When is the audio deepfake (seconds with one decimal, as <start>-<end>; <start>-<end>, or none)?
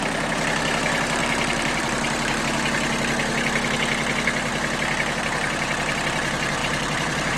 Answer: 1.2-2.4; 6.6-7.4